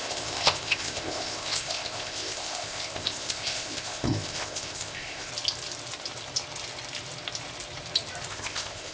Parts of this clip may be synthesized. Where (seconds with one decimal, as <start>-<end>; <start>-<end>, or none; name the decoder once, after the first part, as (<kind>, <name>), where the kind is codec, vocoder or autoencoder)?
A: 0.0-5.3 (codec, ZipCodec); 8.3-8.9